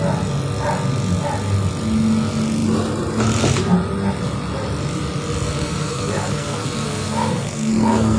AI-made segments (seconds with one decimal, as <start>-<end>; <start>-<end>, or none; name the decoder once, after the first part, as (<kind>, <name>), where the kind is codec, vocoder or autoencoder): 5.6-8.2 (codec, SNAC)